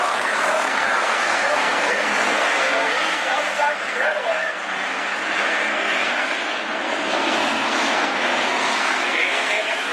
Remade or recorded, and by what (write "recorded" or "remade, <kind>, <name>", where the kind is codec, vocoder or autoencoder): remade, codec, SNAC